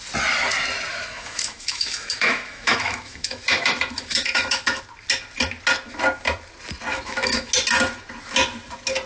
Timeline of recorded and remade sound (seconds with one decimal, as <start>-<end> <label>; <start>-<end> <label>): 0.0-0.9 recorded; 0.9-4.8 remade; 4.8-6.9 recorded; 6.9-7.5 remade; 7.5-9.1 recorded